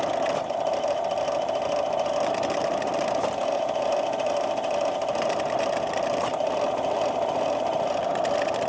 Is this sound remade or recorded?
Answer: recorded